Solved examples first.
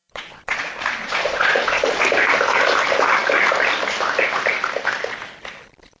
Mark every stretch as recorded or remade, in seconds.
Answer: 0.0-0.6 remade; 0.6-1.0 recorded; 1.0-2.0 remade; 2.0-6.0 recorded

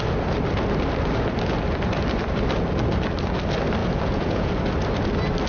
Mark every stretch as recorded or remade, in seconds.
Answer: 0.0-3.8 recorded; 3.8-4.5 remade; 4.5-5.5 recorded

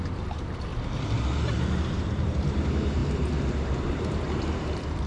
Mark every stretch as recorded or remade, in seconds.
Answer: 0.0-0.7 remade; 0.7-1.5 recorded; 1.5-3.0 remade; 3.0-3.5 recorded; 3.5-5.1 remade

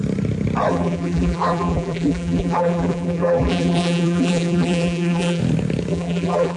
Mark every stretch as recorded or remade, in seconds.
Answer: 0.0-0.7 recorded; 0.7-5.4 remade; 5.4-5.9 recorded; 5.9-6.6 remade

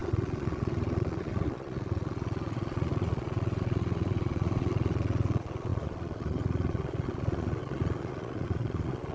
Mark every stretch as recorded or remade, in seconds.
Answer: 0.0-9.1 remade

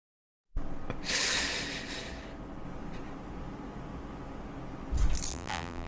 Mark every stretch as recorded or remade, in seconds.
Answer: 0.0-5.3 recorded; 5.3-5.9 remade

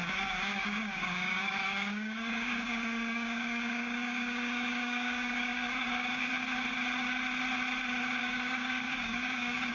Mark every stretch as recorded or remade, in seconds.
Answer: 0.0-6.3 remade; 6.3-8.2 recorded; 8.2-9.7 remade